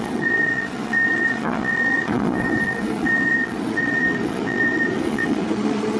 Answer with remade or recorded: remade